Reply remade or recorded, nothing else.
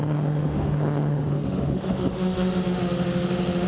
remade